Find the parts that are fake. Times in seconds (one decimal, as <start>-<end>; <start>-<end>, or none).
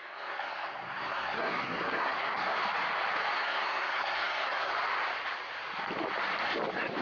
0.0-2.6; 3.3-4.7